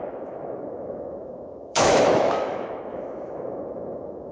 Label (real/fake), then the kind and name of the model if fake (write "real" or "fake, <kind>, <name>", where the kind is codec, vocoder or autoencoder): fake, autoencoder, DAC-VAE